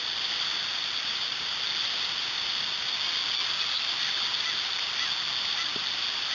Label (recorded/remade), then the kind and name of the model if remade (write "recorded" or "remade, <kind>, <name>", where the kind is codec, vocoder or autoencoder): recorded